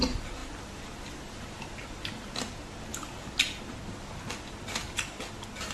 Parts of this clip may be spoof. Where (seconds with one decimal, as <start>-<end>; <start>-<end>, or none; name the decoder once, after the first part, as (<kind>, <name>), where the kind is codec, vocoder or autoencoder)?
none